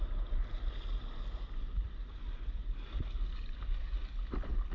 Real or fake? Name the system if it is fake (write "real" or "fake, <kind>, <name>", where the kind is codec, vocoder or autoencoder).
real